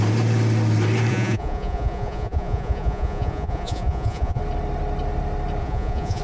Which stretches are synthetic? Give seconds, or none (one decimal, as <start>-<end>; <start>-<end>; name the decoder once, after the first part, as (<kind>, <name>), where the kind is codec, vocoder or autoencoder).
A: 1.1-4.4 (vocoder, Vocos); 5.6-6.2